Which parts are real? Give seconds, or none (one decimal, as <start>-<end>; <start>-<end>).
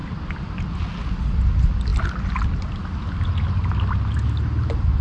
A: 0.0-5.0